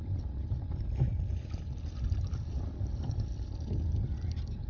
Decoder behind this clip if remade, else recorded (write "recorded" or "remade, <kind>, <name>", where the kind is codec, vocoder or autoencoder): recorded